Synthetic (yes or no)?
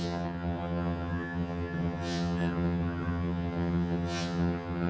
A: yes